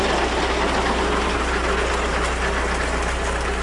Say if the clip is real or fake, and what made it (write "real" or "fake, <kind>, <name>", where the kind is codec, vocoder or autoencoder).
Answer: real